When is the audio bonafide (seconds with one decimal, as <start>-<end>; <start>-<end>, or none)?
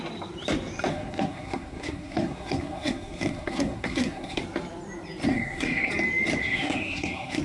0.0-0.9; 4.4-5.3; 5.9-6.4